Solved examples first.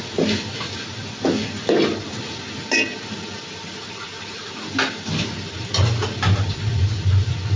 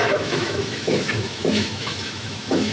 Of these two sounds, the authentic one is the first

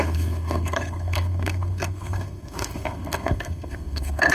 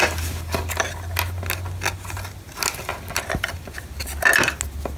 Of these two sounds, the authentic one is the second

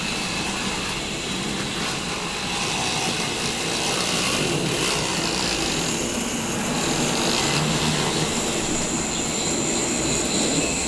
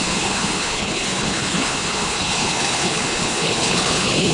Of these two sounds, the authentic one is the first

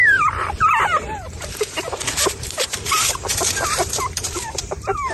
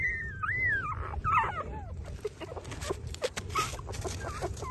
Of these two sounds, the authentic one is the second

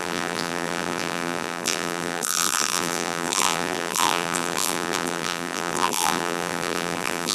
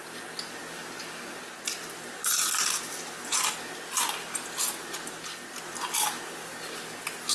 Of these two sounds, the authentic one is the second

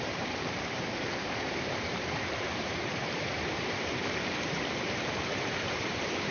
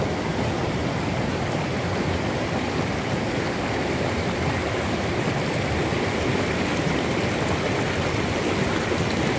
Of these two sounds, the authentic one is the second